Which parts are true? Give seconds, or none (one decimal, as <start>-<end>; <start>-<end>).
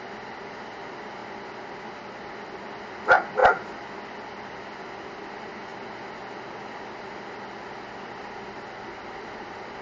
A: 0.0-9.8